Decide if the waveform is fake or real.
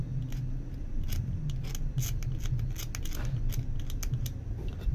real